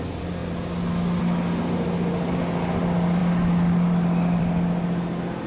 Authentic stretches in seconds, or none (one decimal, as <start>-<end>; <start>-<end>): 0.0-5.5